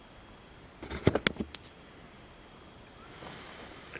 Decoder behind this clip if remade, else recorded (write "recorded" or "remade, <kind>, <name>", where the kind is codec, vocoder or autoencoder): recorded